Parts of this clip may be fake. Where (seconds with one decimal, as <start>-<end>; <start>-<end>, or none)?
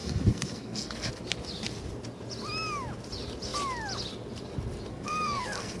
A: 0.0-1.1; 4.9-5.8